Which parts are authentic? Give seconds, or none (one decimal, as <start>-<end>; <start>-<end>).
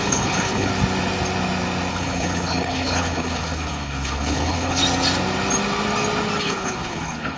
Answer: 0.7-1.9; 4.8-6.4